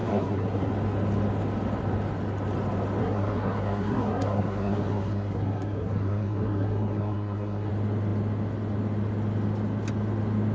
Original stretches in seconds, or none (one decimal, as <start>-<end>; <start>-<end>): 0.7-3.0; 7.7-10.5